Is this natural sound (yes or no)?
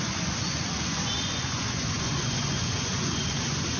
no